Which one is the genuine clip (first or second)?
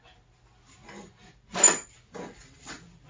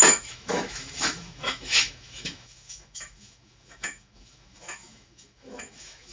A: first